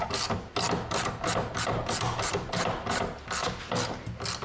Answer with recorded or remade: recorded